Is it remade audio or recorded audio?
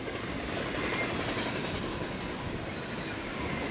recorded